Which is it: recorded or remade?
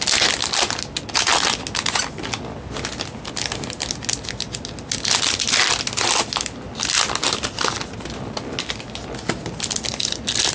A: recorded